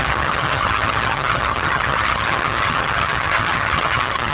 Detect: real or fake fake